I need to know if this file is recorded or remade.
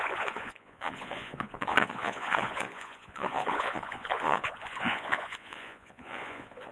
remade